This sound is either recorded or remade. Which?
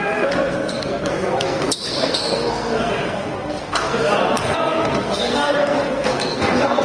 remade